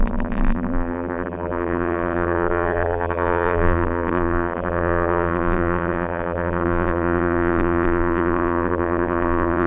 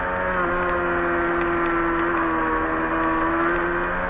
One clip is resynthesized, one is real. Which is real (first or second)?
second